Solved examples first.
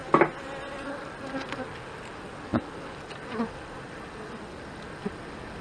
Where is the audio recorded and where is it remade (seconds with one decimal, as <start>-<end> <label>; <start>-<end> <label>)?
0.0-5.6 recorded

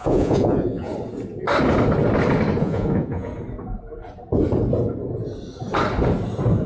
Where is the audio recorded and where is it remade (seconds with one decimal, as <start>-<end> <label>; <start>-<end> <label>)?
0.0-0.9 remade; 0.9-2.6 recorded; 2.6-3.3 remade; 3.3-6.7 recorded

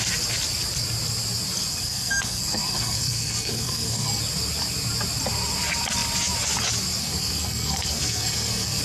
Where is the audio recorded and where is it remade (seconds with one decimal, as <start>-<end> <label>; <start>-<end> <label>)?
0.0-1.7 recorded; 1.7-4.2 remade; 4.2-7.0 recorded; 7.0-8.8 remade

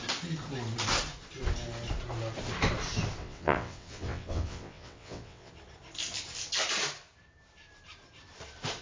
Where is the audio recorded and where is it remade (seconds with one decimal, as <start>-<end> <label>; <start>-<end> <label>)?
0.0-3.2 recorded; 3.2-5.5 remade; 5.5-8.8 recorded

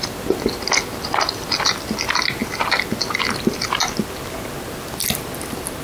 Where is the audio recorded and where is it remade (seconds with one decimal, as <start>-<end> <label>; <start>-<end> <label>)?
0.0-5.8 recorded

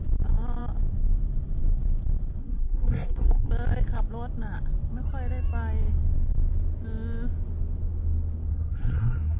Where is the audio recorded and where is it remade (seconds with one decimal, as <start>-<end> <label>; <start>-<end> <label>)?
0.0-2.4 recorded; 2.4-3.5 remade; 3.5-8.5 recorded; 8.5-9.4 remade